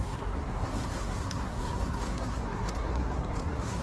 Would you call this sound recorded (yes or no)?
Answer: no